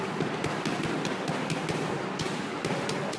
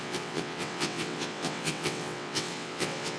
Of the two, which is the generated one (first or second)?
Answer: second